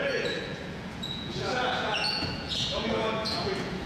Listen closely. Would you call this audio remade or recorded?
remade